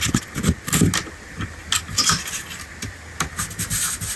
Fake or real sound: real